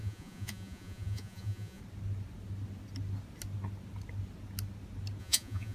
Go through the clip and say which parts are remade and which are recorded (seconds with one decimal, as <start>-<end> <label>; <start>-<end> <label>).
0.0-1.8 remade; 1.8-5.2 recorded; 5.2-5.7 remade